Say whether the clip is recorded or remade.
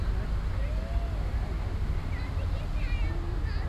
recorded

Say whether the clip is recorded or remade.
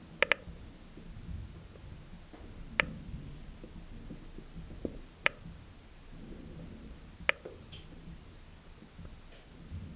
recorded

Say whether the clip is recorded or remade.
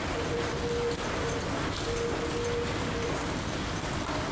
recorded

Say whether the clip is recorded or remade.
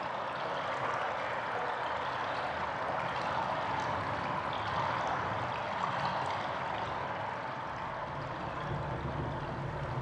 recorded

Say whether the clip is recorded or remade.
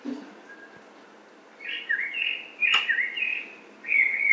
recorded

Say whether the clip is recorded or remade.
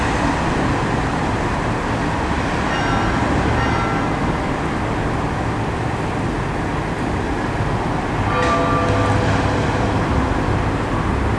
recorded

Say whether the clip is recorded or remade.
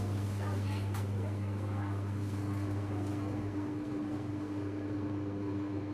remade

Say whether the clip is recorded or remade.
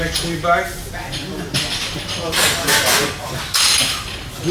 recorded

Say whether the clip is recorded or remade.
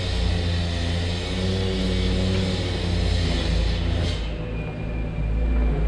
recorded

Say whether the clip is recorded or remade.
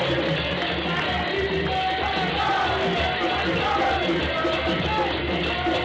recorded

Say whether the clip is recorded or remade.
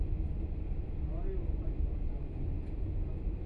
recorded